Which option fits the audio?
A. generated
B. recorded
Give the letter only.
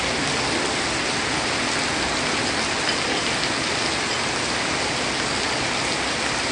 B